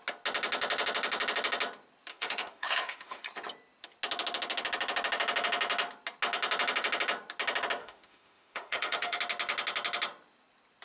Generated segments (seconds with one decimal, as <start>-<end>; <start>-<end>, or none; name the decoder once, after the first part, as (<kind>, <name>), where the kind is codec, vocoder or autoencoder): 2.1-3.2 (autoencoder, DAC-VAE); 7.8-9.2